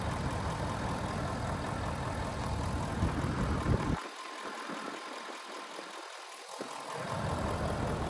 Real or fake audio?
real